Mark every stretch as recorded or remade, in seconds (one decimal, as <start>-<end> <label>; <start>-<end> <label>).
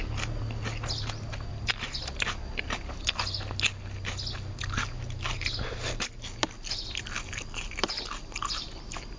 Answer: 0.0-9.2 recorded